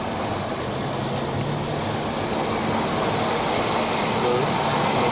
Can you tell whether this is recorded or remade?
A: recorded